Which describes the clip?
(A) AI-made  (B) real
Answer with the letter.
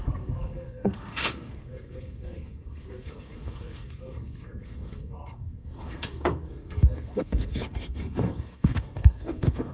A